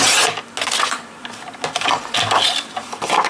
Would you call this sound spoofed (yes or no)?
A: no